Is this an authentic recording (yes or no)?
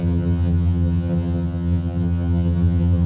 no